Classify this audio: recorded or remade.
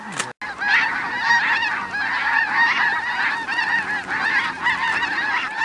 recorded